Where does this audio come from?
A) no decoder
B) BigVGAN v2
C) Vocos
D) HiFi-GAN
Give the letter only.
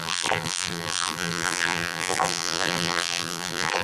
B